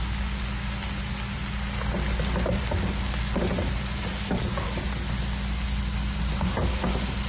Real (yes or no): yes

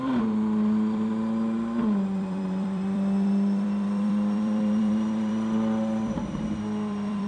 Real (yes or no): no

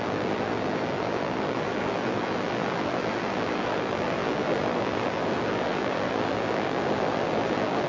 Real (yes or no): no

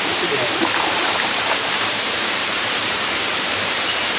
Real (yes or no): no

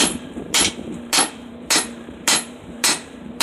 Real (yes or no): no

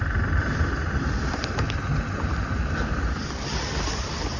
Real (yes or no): no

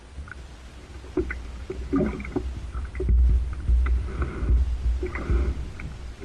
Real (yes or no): yes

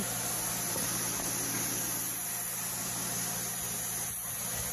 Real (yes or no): yes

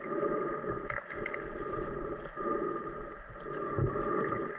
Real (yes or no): yes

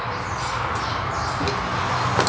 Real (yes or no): yes